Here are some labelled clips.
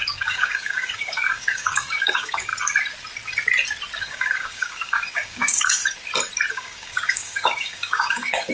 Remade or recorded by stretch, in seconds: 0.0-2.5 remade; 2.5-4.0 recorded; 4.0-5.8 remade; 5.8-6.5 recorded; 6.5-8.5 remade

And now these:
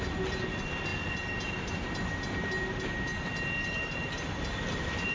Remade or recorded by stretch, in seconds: 0.0-5.1 recorded

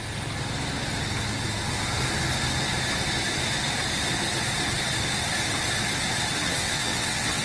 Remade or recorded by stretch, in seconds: 0.0-6.4 recorded; 6.4-7.4 remade

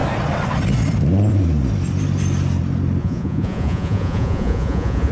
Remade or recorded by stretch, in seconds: 0.0-3.0 recorded; 3.0-5.1 remade

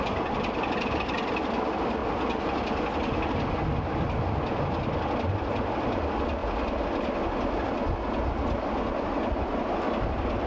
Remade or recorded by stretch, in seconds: 0.0-10.5 recorded